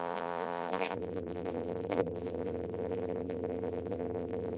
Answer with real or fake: fake